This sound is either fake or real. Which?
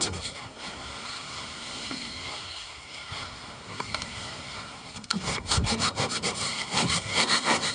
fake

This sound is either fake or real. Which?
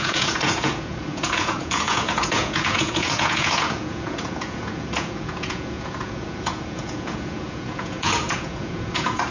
fake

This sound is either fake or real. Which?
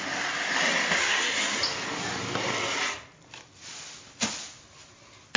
real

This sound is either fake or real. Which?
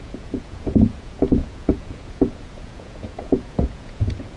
fake